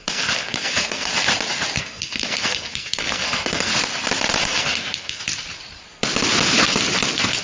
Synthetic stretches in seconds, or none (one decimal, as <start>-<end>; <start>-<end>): 0.0-1.1; 1.8-3.7; 4.4-5.2